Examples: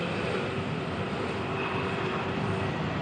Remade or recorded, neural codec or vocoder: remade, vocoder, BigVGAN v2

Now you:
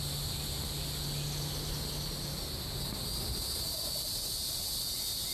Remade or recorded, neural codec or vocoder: recorded